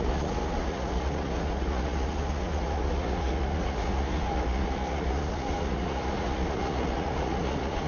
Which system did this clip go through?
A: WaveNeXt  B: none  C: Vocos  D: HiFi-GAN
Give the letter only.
C